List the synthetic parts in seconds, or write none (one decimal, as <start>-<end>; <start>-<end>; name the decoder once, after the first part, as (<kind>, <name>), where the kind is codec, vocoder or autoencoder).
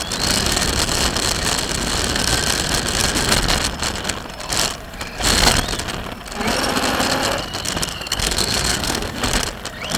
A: 7.9-9.2 (codec, SNAC)